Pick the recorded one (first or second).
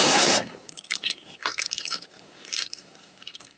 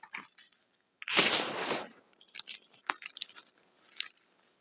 second